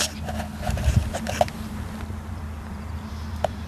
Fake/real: fake